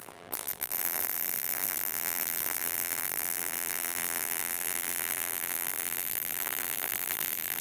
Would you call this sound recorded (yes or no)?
no